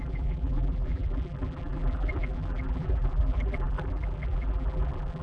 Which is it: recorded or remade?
remade